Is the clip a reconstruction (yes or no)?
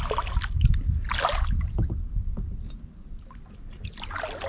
no